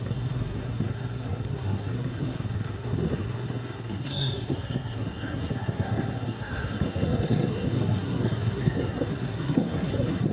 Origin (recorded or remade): remade